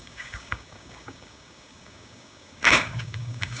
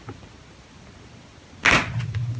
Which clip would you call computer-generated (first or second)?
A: first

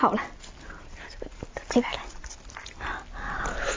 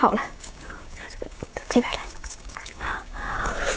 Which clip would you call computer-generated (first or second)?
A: second